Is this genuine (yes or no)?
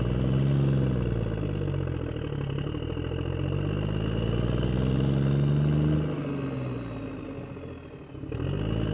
yes